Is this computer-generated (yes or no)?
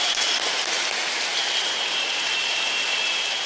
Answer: yes